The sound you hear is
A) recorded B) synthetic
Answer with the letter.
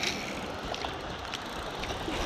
A